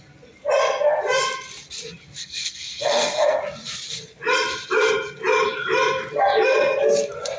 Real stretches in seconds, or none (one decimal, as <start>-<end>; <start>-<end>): 0.0-2.2; 3.4-7.4